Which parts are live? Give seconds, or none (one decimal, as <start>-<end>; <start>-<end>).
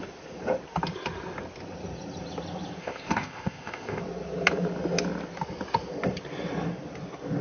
0.0-2.8; 4.0-7.4